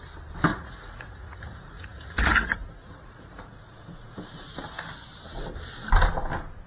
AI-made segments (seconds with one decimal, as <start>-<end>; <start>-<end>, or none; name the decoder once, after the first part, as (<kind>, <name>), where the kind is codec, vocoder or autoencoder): 0.5-4.5 (vocoder, Vocos)